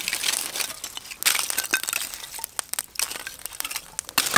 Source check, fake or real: real